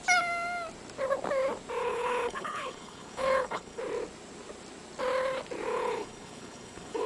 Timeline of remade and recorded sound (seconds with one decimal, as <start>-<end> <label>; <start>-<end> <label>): 0.0-1.8 recorded; 1.8-3.8 remade; 3.8-5.7 recorded; 5.7-7.1 remade